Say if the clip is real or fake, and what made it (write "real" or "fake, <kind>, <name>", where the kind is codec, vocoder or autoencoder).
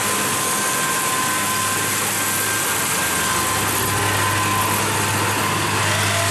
real